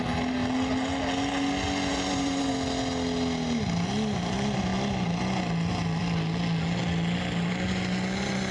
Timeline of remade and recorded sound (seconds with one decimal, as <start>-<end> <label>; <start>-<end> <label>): 0.0-1.9 recorded; 1.9-2.5 remade; 2.5-8.5 recorded